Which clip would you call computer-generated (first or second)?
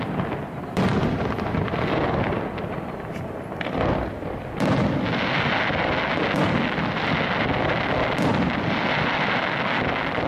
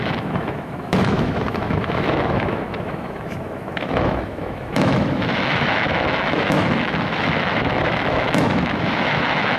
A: second